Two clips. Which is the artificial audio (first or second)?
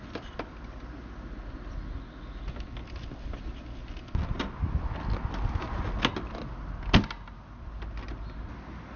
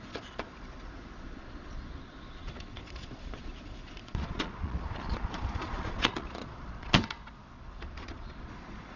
second